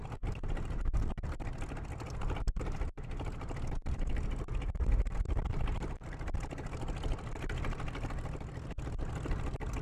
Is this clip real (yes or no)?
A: yes